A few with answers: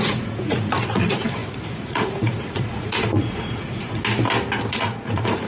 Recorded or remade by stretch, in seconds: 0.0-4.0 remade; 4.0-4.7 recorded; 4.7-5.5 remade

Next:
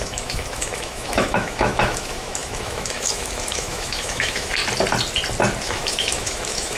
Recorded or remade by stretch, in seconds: 0.0-4.6 remade; 4.6-5.6 recorded; 5.6-6.8 remade

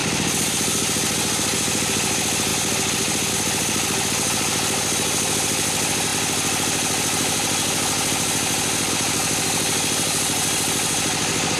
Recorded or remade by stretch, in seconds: 0.0-11.6 recorded

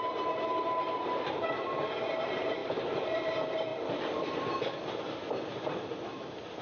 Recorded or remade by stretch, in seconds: 0.0-6.6 recorded

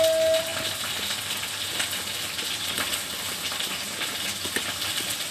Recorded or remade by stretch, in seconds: 0.0-5.3 recorded

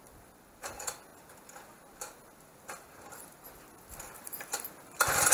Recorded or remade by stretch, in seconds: 0.0-5.3 recorded